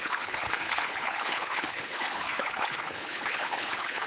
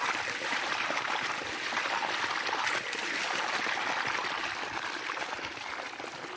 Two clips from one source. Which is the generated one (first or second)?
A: first